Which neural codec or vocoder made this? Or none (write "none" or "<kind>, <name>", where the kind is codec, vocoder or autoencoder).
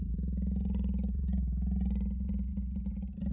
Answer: none